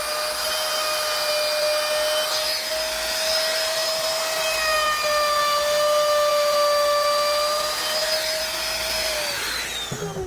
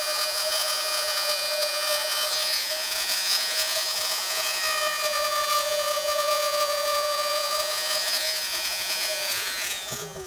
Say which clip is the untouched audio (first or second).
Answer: first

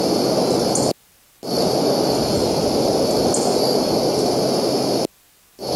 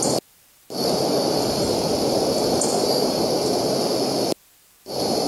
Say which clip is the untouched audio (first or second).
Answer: first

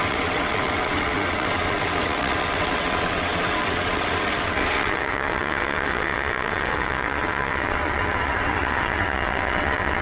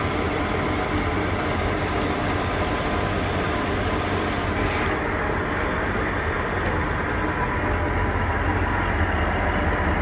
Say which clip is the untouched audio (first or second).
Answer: second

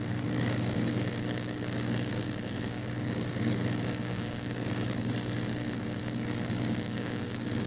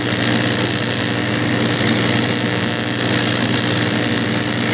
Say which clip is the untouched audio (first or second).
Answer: second